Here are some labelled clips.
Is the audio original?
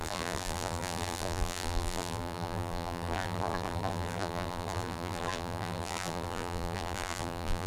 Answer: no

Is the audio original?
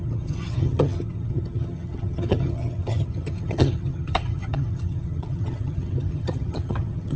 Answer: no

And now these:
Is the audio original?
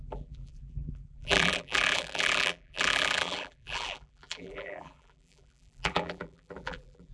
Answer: no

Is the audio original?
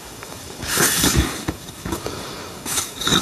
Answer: no